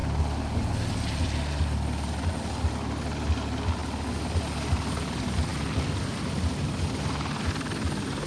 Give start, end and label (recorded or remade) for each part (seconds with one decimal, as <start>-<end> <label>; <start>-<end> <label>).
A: 0.0-8.3 recorded